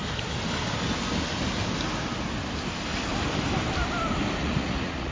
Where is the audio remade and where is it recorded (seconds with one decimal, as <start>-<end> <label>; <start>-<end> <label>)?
0.0-4.4 recorded; 4.4-5.1 remade

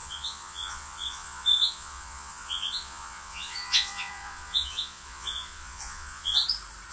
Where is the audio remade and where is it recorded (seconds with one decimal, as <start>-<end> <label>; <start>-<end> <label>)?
0.0-6.4 remade; 6.4-6.9 recorded

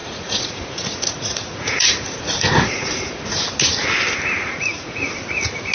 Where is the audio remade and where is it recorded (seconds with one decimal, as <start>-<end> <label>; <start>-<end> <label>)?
0.0-3.4 remade; 3.4-4.4 recorded; 4.4-5.1 remade; 5.1-5.7 recorded

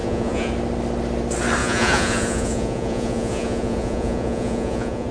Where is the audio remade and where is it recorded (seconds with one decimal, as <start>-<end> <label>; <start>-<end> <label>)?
0.0-0.5 remade; 0.5-1.6 recorded; 1.6-5.1 remade

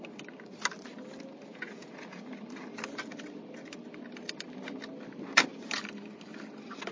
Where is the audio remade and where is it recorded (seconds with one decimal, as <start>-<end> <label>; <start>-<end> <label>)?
0.0-1.5 recorded; 1.5-2.2 remade; 2.2-6.9 recorded